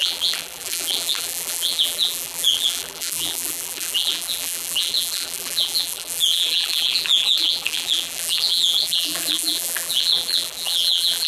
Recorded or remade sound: remade